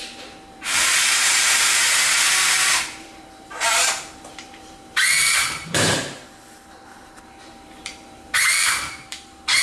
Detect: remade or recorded remade